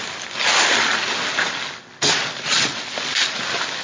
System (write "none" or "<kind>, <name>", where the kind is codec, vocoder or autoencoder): none